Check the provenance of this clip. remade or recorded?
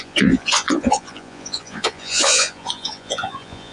remade